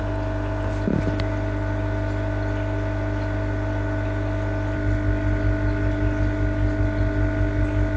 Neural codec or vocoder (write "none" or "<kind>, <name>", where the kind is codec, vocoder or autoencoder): none